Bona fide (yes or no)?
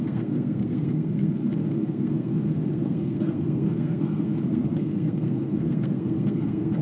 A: no